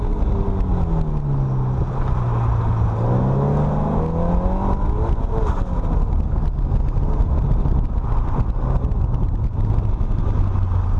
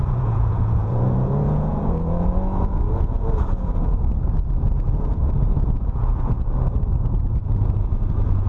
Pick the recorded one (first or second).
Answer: first